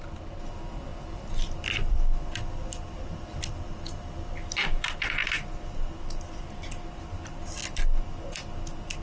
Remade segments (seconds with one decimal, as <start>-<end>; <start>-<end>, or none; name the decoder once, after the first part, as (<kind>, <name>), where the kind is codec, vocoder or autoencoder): none